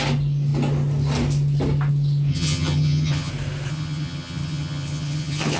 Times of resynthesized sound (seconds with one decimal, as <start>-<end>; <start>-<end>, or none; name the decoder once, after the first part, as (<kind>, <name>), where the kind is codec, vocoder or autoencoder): 2.3-3.3 (vocoder, HiFi-GAN); 3.7-5.6